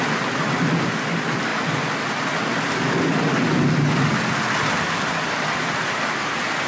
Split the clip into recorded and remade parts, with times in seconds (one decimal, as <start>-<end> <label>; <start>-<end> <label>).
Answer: 0.0-6.7 recorded